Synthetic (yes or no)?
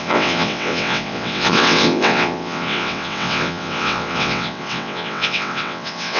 yes